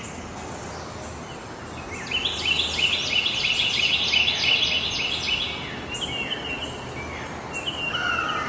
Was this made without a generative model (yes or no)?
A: yes